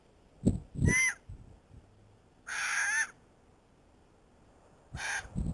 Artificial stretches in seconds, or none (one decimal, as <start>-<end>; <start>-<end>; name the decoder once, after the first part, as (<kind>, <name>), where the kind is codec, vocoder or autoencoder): none